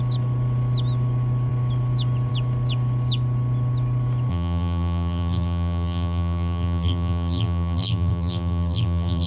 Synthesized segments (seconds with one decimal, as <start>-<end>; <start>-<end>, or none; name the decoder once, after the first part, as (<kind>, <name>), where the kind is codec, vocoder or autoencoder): 4.3-9.3 (vocoder, BigVGAN v2)